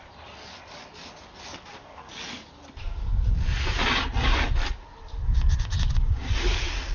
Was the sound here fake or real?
real